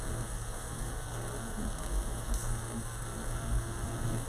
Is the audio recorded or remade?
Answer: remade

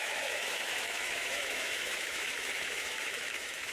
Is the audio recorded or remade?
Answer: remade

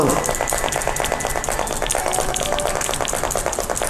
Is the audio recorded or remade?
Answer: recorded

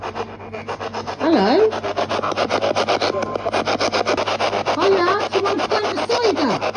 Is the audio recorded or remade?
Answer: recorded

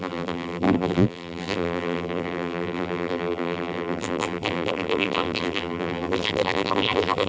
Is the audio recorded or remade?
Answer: remade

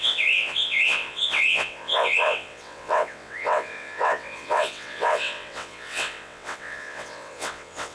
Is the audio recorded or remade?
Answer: remade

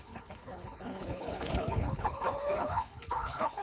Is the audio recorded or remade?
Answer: remade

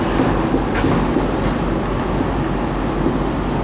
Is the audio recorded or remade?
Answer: recorded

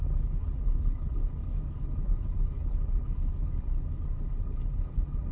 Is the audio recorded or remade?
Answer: remade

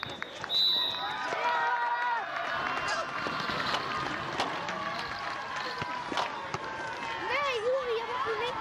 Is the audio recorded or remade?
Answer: recorded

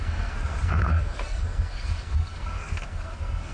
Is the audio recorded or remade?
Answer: remade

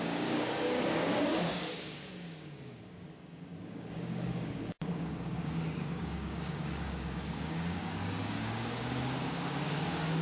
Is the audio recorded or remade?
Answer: remade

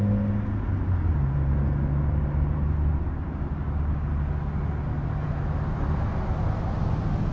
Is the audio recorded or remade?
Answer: recorded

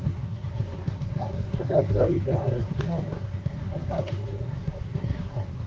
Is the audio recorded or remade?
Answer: remade